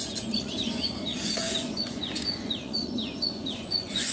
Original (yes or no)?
no